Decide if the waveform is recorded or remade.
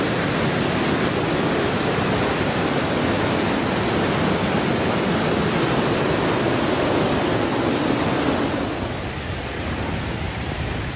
recorded